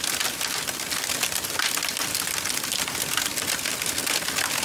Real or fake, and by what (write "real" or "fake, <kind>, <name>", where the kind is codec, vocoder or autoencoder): real